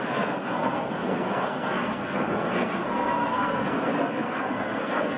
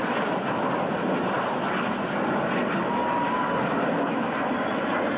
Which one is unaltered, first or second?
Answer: second